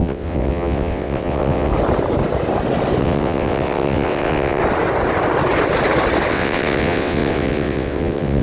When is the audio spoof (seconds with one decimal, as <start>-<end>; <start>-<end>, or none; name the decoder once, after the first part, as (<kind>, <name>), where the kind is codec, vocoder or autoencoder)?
0.0-1.7 (vocoder, WaveNeXt); 3.0-4.6; 6.3-8.4